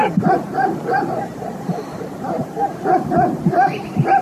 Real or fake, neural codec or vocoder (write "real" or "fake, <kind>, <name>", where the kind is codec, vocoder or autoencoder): fake, vocoder, BigVGAN v2